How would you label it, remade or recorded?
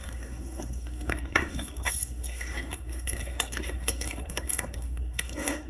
remade